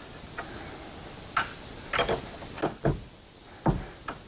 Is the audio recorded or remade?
recorded